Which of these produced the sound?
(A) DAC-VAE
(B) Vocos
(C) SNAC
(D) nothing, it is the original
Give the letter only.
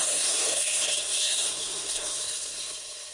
C